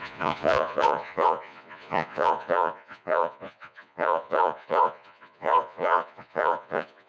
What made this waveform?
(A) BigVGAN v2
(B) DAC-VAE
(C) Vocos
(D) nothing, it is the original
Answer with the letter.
C